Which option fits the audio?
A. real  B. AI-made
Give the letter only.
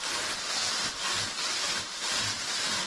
A